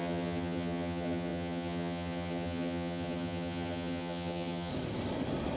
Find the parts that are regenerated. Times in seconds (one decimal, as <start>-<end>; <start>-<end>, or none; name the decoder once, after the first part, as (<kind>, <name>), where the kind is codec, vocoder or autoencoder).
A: 0.0-4.7 (vocoder, HiFi-GAN)